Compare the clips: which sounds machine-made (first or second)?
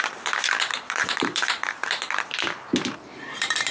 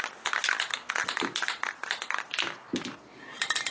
first